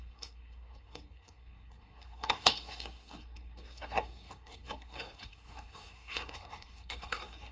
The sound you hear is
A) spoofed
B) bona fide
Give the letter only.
A